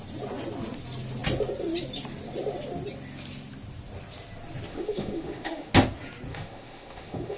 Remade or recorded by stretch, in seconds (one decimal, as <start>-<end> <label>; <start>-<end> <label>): 0.0-4.7 recorded; 4.7-5.7 remade; 5.7-6.3 recorded; 6.3-7.4 remade